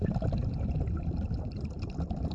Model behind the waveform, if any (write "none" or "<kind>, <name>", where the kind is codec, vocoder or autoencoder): none